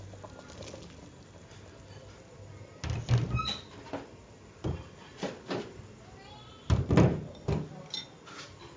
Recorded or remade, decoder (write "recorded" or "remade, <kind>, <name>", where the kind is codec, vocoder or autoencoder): recorded